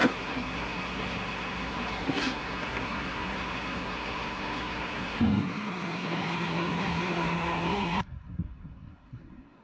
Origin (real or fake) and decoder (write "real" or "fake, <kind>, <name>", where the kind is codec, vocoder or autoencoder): fake, codec, SNAC